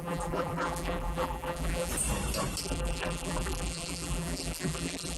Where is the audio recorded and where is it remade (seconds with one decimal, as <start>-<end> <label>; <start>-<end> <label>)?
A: 0.0-1.9 remade; 1.9-2.6 recorded; 2.6-5.2 remade